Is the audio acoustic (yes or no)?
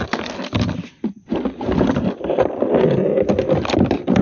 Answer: yes